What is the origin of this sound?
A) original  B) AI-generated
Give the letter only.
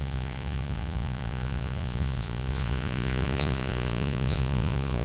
B